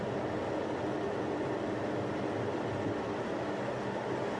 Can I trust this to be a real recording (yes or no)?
yes